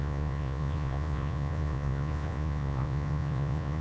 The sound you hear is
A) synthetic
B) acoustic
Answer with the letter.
A